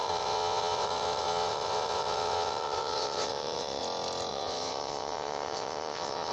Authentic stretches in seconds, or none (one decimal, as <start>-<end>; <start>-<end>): 3.8-4.3